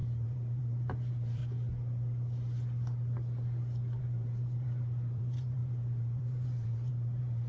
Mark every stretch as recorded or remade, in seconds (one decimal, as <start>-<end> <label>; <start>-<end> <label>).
0.0-1.4 remade; 1.4-4.0 recorded; 4.0-7.5 remade